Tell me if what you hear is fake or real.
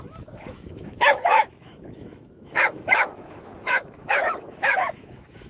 fake